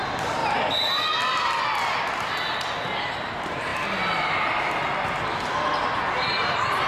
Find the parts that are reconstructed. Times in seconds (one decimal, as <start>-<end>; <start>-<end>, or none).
0.0-0.4; 3.0-3.7; 6.3-6.9